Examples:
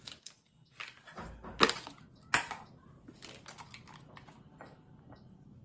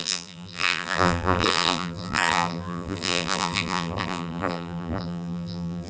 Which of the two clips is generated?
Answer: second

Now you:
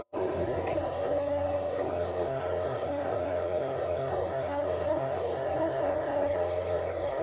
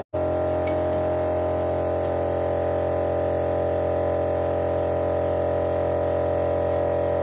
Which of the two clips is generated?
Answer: first